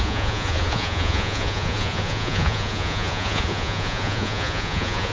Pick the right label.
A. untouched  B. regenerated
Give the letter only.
B